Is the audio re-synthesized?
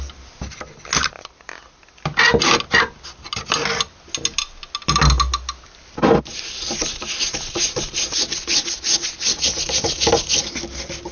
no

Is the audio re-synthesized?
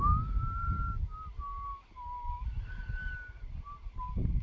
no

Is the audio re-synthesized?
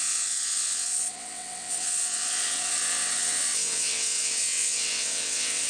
yes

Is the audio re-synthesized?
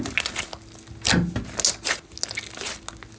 no